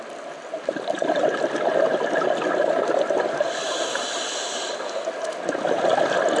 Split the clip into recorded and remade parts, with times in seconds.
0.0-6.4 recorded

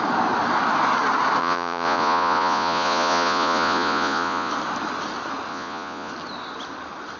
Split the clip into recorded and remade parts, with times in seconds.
0.0-1.4 recorded; 1.4-4.5 remade; 4.5-5.5 recorded; 5.5-6.1 remade; 6.1-7.2 recorded

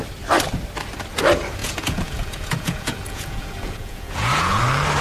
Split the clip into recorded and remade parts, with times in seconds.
0.0-1.6 recorded; 1.6-4.6 remade; 4.6-5.0 recorded

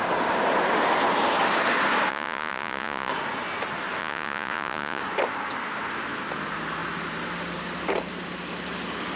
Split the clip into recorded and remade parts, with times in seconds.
0.0-2.1 recorded; 2.1-3.1 remade; 3.1-4.0 recorded; 4.0-5.0 remade; 5.0-9.2 recorded

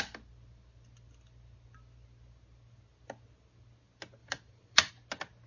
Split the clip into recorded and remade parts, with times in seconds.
0.0-4.2 recorded; 4.2-4.9 remade; 4.9-5.5 recorded

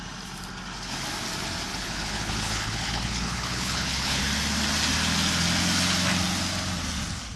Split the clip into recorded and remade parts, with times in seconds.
0.0-1.7 recorded; 1.7-4.2 remade; 4.2-7.4 recorded

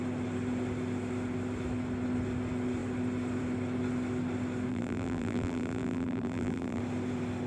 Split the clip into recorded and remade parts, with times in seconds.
0.0-4.7 recorded; 4.7-6.8 remade; 6.8-7.5 recorded